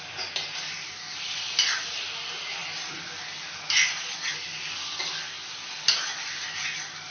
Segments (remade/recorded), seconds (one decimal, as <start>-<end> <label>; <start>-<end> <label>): 0.0-7.1 recorded